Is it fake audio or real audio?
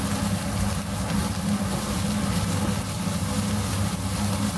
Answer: real